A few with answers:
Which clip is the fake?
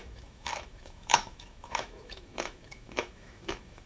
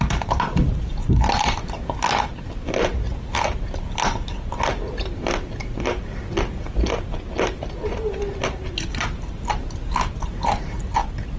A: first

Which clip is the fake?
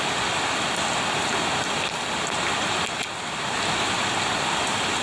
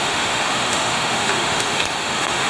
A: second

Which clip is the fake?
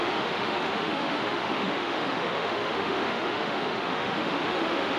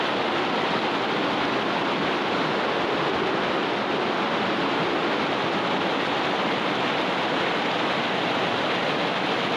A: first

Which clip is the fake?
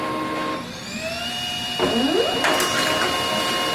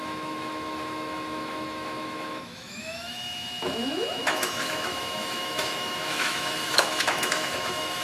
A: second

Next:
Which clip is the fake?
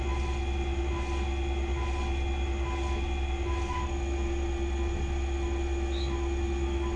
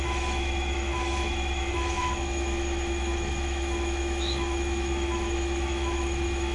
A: second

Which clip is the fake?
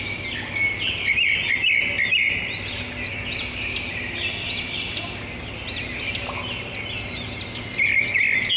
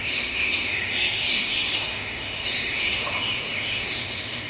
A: second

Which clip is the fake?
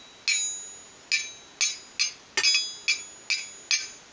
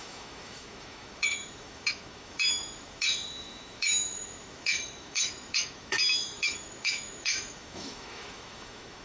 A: second